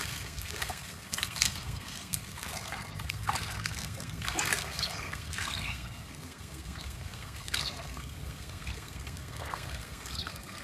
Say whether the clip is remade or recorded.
remade